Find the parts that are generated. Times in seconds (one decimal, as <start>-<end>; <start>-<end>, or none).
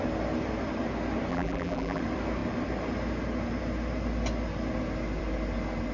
1.3-2.0